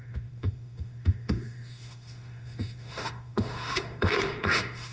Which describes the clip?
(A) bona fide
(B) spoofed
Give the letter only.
B